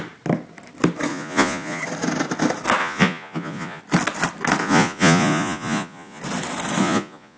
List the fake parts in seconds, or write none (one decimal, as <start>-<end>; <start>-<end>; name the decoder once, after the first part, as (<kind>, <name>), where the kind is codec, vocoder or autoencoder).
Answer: 1.1-1.8 (vocoder, Vocos); 2.8-3.8; 4.6-6.2; 6.8-7.4